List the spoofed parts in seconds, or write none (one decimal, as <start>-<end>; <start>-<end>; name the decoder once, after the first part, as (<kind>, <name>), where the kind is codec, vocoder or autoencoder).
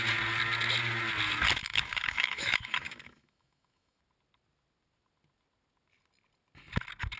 1.6-4.0 (autoencoder, DAC-VAE)